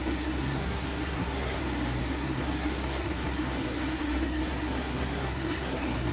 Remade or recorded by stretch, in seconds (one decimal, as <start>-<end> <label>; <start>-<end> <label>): 0.0-1.6 remade; 1.6-2.0 recorded; 2.0-6.1 remade